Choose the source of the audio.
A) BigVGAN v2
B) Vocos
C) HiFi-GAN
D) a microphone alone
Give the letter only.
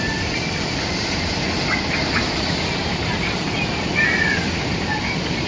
D